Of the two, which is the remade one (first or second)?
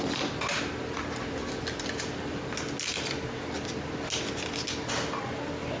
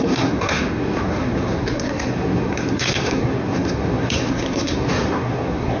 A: second